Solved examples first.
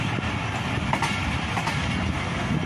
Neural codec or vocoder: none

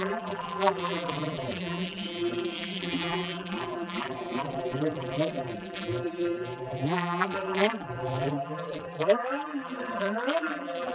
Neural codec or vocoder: vocoder, BigVGAN v2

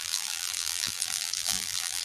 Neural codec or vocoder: vocoder, BigVGAN v2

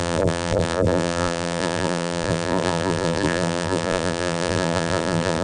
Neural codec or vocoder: vocoder, BigVGAN v2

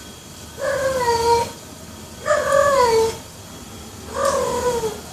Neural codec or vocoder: none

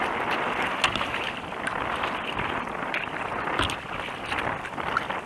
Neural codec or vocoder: none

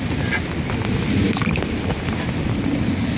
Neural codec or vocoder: vocoder, BigVGAN v2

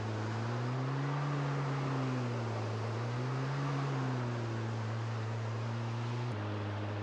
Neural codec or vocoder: none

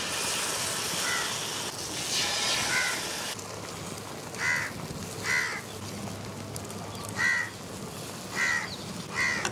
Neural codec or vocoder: none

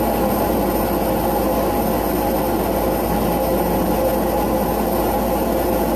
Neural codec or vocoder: none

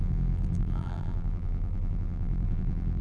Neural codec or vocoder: vocoder, BigVGAN v2